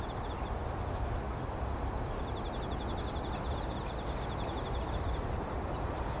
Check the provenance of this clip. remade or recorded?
recorded